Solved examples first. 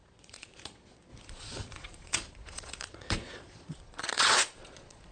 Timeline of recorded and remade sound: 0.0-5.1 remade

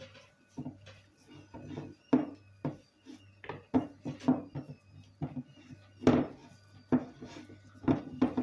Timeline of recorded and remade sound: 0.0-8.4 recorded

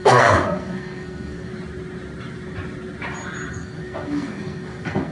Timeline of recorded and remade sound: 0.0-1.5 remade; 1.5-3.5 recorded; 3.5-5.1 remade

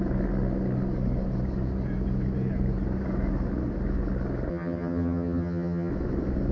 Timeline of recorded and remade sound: 0.0-4.5 recorded; 4.5-5.9 remade; 5.9-6.5 recorded

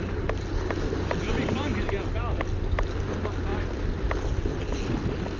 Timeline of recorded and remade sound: 0.0-5.4 recorded

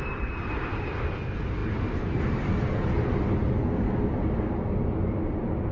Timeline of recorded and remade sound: 0.0-5.7 recorded

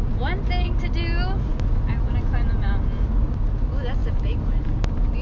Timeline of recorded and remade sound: 0.0-5.2 recorded

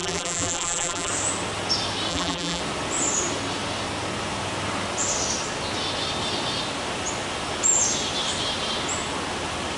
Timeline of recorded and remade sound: 0.0-1.1 remade; 1.1-2.1 recorded; 2.1-2.6 remade; 2.6-9.8 recorded